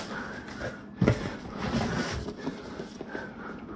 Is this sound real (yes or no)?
yes